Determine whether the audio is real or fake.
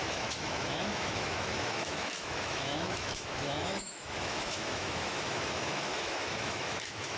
fake